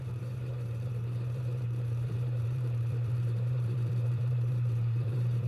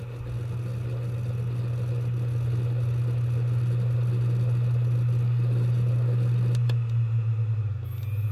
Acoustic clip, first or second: second